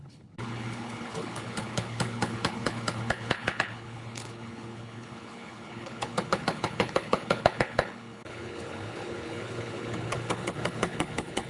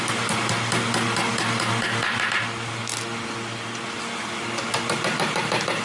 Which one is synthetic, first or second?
first